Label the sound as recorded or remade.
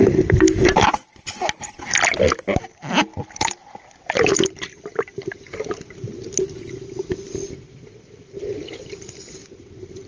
recorded